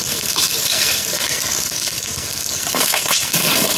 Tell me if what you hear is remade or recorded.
remade